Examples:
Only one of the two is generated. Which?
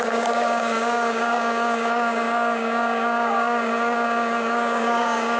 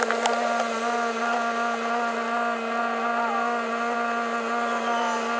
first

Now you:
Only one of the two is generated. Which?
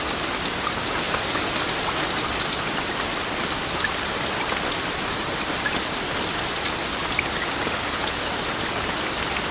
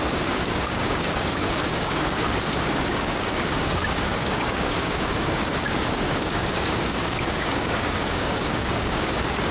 second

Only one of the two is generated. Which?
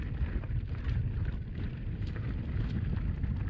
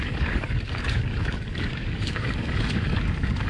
second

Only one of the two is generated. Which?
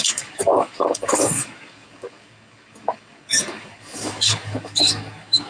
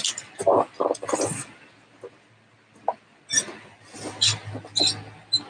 first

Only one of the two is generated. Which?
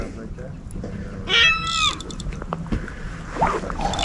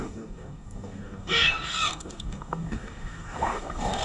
second